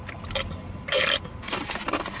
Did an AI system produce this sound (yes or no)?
yes